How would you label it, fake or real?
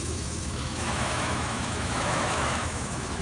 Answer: fake